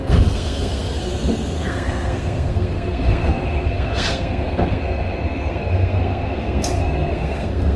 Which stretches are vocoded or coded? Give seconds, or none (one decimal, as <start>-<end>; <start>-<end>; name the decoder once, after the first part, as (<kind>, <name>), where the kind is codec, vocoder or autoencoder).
0.0-7.8 (codec, SNAC)